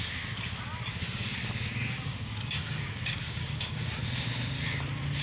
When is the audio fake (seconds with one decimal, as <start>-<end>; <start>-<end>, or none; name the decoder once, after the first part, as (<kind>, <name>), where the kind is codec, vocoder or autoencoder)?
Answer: 0.9-4.0 (codec, DAC)